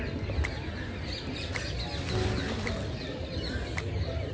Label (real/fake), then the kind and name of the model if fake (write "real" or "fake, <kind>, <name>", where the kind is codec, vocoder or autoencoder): real